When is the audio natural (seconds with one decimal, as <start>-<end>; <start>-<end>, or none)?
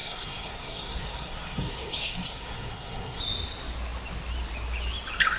3.2-5.4